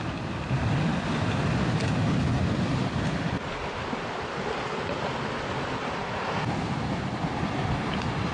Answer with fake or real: real